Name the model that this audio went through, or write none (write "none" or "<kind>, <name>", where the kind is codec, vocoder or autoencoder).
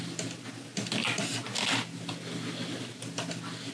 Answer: none